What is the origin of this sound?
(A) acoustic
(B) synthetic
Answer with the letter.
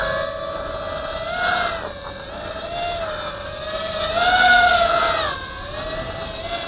A